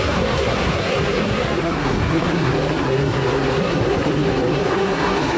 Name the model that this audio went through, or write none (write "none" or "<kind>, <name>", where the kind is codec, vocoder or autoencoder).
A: codec, SNAC